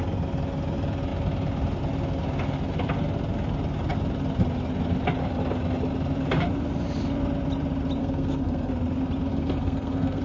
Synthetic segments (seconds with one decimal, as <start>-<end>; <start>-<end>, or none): 8.0-8.7; 9.3-10.2